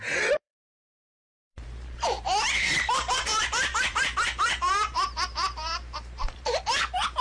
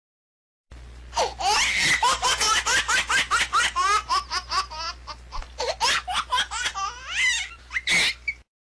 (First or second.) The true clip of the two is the second